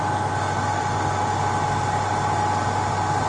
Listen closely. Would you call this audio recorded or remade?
recorded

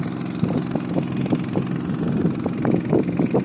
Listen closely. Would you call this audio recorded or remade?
recorded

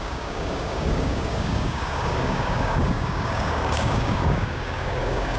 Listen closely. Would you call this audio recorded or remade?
remade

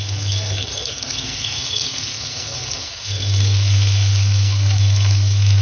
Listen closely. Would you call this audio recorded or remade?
remade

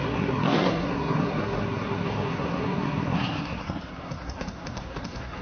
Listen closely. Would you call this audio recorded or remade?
remade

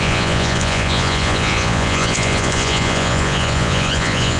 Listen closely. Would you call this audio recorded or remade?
remade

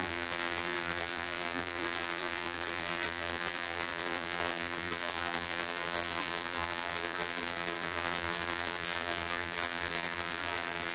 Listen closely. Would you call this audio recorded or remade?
remade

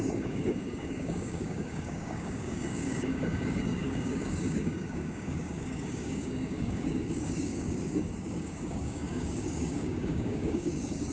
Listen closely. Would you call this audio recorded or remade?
remade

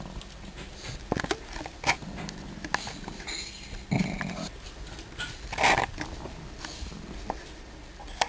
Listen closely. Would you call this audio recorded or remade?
recorded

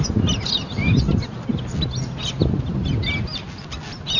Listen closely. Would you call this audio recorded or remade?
recorded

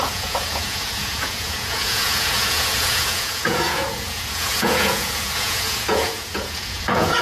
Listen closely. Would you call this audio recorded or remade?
remade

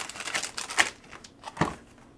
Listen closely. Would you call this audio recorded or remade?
recorded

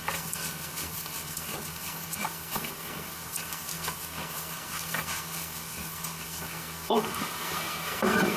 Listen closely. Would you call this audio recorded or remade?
remade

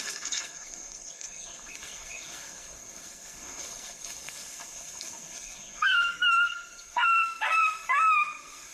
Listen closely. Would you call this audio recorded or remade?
remade